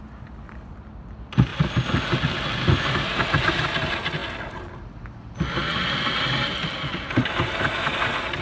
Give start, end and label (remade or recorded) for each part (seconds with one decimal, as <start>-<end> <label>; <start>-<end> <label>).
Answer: 0.0-8.4 recorded